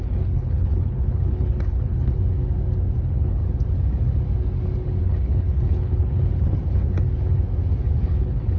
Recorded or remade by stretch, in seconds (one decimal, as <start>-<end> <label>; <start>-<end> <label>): 0.0-2.2 remade; 2.2-3.0 recorded; 3.0-3.4 remade; 3.4-5.0 recorded; 5.0-6.6 remade; 6.6-8.0 recorded; 8.0-8.6 remade